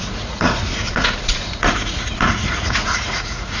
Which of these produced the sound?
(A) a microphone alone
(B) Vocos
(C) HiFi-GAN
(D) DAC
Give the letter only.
B